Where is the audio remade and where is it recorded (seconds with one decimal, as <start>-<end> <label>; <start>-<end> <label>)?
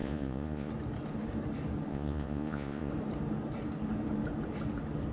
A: 0.0-0.7 remade; 0.7-1.9 recorded; 1.9-2.9 remade; 2.9-5.1 recorded